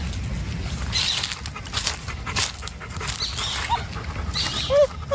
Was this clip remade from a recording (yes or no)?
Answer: no